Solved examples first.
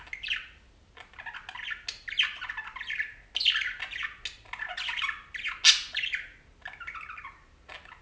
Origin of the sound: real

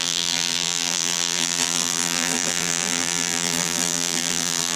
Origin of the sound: fake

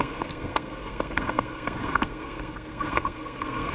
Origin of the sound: fake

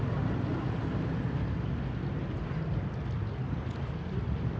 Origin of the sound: real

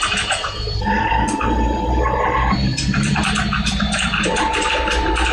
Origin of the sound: fake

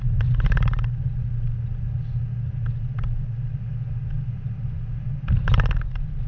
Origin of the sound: real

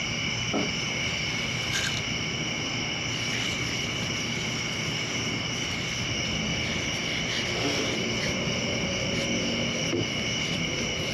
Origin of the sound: real